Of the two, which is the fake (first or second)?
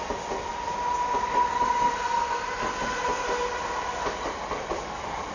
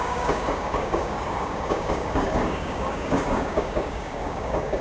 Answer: second